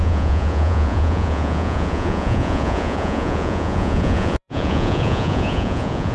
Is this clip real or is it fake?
fake